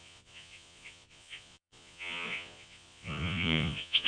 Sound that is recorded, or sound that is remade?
remade